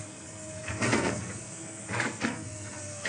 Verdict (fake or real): fake